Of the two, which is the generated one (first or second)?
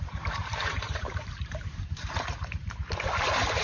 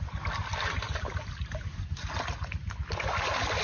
first